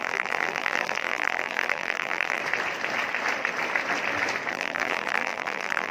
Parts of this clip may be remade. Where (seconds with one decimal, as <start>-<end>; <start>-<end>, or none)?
0.0-2.4; 4.5-5.9